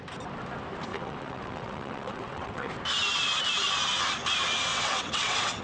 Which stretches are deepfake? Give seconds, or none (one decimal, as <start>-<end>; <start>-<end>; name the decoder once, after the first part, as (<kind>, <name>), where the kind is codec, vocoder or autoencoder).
0.9-2.7 (vocoder, WaveNeXt); 4.7-5.6